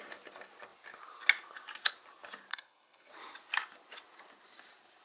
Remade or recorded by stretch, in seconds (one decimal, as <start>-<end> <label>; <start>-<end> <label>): 0.0-2.5 recorded; 2.5-3.1 remade; 3.1-5.0 recorded